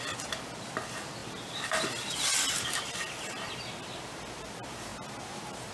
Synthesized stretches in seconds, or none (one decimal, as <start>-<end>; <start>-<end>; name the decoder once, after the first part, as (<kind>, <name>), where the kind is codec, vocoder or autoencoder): none